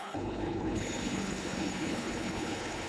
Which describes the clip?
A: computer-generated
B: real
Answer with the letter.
A